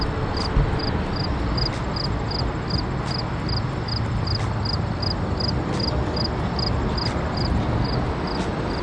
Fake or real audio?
real